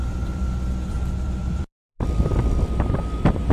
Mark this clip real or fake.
fake